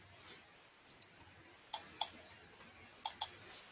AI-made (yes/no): no